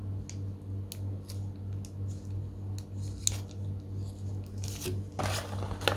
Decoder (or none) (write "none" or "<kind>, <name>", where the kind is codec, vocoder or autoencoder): none